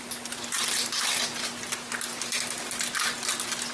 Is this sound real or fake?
real